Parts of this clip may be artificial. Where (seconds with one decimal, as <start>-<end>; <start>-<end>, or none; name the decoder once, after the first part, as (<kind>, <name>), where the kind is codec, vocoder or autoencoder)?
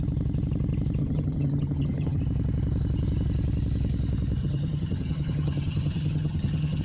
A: 1.0-2.2 (vocoder, HiFi-GAN); 4.4-6.8